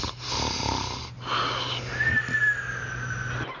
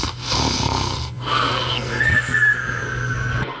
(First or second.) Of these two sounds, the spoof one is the second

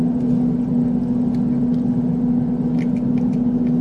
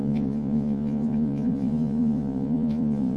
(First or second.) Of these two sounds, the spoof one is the second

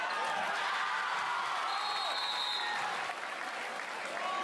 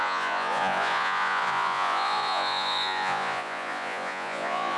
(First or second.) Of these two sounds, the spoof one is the second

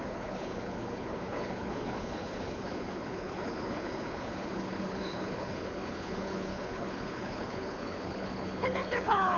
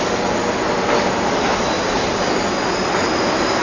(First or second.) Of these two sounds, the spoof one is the first